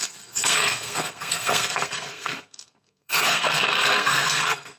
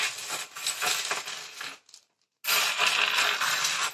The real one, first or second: second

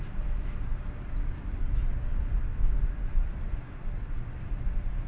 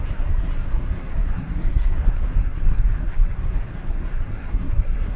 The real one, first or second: first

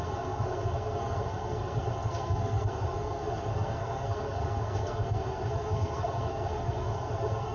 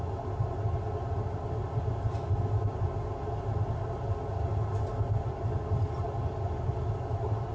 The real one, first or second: second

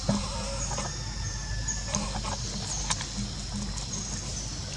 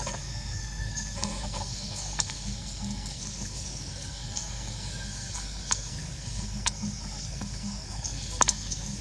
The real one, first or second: first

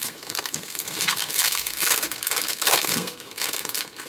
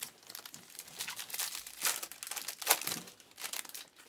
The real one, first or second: second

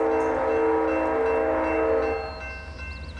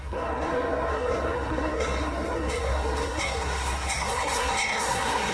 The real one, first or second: first